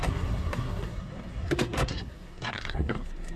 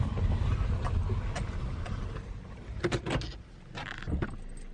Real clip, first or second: second